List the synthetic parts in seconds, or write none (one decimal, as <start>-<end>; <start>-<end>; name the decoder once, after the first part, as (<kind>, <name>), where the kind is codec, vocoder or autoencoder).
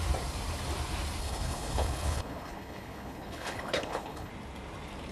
1.2-4.3 (codec, HILCodec)